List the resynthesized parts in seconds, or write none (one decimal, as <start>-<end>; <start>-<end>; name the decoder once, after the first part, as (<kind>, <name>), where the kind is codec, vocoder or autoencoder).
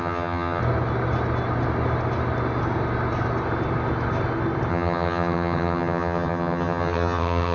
0.0-0.6 (vocoder, HiFi-GAN); 4.7-7.5